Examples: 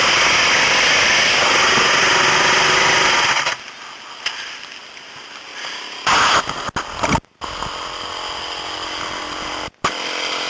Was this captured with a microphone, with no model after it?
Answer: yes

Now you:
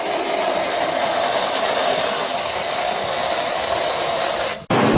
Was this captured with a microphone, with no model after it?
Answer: yes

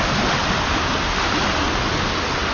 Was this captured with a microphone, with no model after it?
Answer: yes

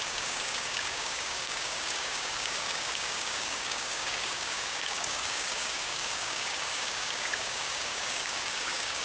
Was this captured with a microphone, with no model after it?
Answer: no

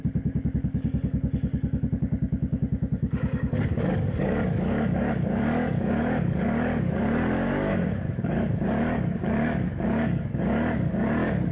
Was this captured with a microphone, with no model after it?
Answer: no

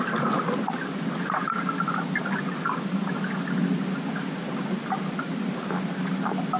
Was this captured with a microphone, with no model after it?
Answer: yes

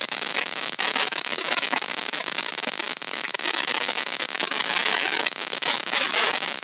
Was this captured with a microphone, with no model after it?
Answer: no